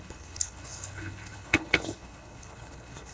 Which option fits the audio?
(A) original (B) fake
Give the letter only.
B